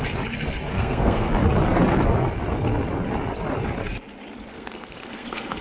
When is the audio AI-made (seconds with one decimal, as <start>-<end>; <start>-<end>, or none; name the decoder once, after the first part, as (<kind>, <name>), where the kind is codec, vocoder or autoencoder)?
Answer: 0.7-1.3 (codec, SNAC); 4.5-5.6